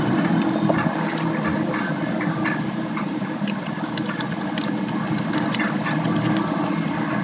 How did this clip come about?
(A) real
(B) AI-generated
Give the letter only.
A